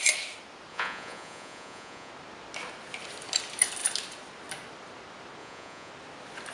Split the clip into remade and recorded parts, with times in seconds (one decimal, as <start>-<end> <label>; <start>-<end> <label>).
0.0-0.7 recorded; 0.7-2.1 remade; 2.1-5.4 recorded; 5.4-5.9 remade; 5.9-6.5 recorded